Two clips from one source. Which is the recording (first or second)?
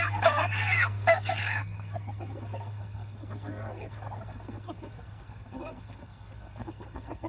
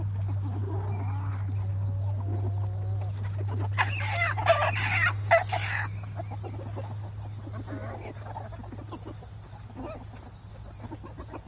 second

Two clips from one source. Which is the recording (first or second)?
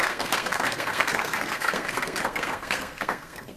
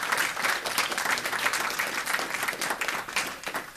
second